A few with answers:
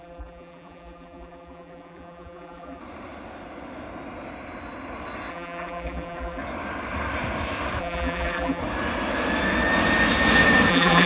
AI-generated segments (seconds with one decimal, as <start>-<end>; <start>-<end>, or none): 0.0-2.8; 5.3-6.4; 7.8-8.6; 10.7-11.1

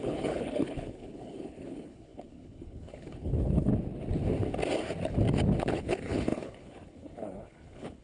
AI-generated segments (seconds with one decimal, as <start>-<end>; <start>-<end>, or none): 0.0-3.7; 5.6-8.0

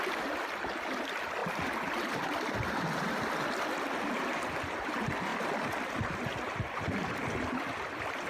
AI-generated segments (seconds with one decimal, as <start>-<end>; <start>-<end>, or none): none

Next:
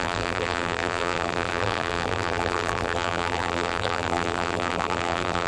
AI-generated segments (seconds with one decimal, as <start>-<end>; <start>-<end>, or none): 0.0-5.5